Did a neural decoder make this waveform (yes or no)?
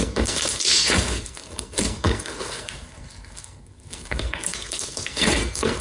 yes